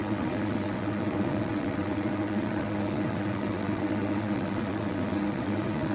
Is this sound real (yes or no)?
no